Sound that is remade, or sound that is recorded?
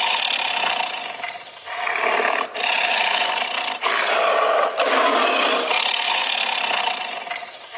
recorded